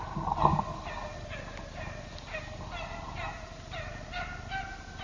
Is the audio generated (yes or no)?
no